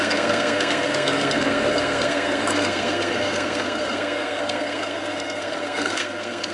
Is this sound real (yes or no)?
no